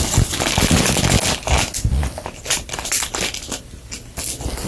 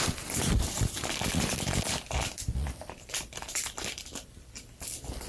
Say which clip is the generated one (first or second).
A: second